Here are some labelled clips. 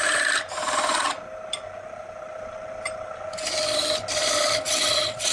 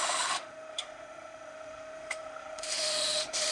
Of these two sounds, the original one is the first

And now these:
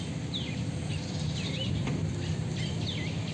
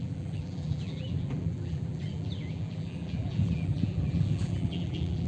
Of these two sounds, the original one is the first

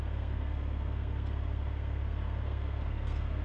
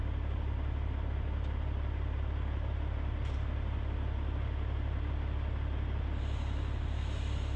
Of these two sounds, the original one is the second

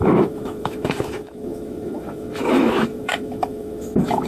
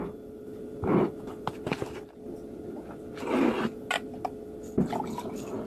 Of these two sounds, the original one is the second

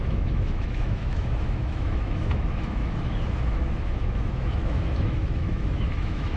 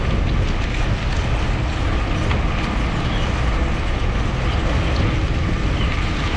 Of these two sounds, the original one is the second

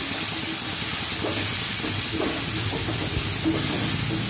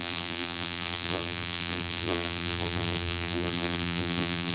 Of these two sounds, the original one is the first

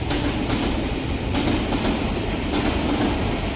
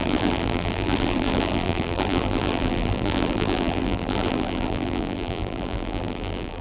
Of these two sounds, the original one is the first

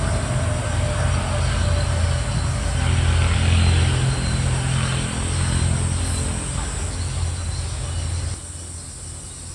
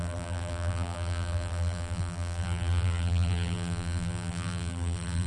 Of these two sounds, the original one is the first